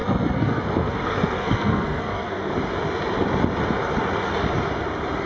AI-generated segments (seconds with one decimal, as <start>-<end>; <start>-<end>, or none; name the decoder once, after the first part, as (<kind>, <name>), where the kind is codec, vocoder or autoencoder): 0.0-2.5 (codec, SNAC)